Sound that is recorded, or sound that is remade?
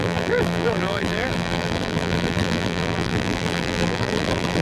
remade